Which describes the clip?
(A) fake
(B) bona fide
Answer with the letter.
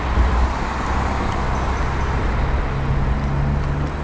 B